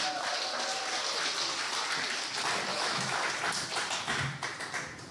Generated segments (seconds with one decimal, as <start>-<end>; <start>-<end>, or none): 2.7-3.3